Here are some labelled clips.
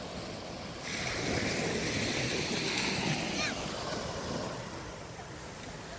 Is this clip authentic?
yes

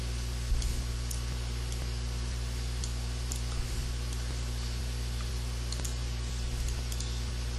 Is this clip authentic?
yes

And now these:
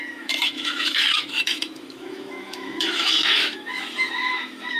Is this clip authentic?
no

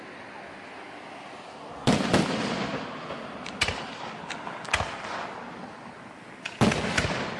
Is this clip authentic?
yes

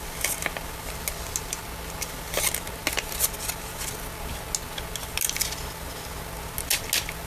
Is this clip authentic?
yes